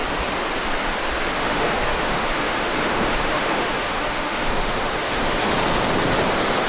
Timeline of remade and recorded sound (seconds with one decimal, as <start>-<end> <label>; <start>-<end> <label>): 0.0-1.5 recorded; 1.5-5.5 remade; 5.5-6.7 recorded